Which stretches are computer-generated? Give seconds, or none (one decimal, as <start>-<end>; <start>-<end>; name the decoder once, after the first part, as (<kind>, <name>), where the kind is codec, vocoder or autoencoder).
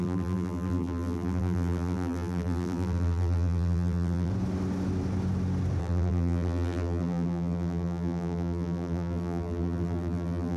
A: 0.0-4.3 (vocoder, BigVGAN v2); 5.8-10.6